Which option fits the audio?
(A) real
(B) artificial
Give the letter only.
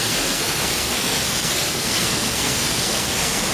B